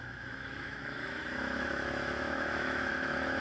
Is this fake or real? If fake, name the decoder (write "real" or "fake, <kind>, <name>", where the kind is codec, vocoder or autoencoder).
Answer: fake, autoencoder, DAC-VAE